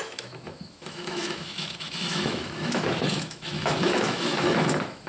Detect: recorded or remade remade